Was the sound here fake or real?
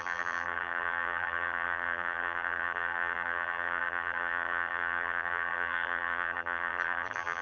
fake